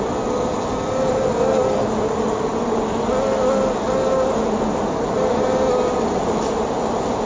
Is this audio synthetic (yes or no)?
no